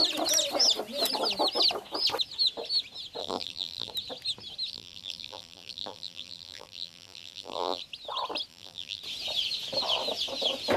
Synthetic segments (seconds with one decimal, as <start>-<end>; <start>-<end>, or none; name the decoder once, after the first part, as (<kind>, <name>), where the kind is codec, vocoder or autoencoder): 3.2-3.9 (vocoder, BigVGAN v2); 4.7-7.8; 8.5-9.0